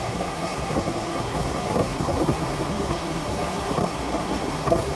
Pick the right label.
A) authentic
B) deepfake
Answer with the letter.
B